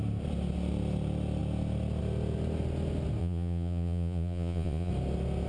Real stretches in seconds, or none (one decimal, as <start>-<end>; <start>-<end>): 0.0-3.2; 4.9-5.5